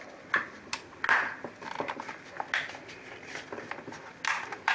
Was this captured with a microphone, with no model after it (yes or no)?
yes